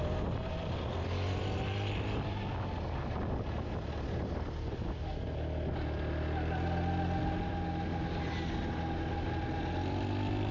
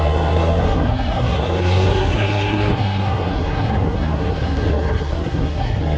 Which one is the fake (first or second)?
second